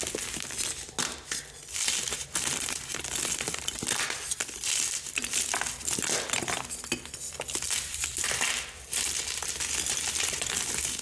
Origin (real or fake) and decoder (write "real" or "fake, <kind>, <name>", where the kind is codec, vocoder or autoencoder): real